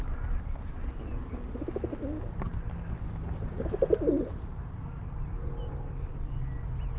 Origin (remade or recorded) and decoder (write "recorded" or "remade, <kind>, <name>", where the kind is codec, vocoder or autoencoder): recorded